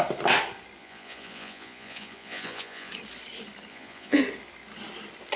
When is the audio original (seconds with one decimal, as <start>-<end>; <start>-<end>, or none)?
0.0-0.8; 2.9-3.7; 4.2-5.4